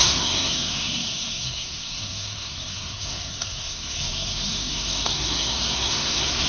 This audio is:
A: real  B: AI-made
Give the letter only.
B